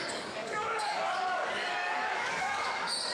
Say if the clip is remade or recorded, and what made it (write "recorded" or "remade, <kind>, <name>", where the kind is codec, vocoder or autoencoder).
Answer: remade, codec, DAC